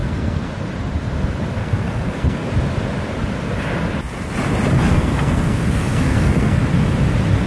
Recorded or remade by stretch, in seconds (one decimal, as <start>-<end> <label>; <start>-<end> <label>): 0.0-0.5 remade; 0.5-1.6 recorded; 1.6-2.5 remade; 2.5-4.9 recorded; 4.9-6.6 remade; 6.6-7.5 recorded